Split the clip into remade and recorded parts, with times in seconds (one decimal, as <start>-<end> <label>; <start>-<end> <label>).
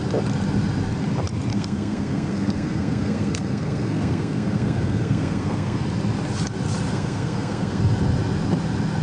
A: 0.0-1.5 recorded; 1.5-5.8 remade; 5.8-6.9 recorded; 6.9-7.8 remade; 7.8-9.0 recorded